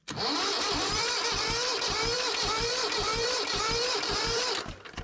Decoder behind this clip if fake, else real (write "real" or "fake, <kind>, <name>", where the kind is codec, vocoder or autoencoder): fake, vocoder, BigVGAN v2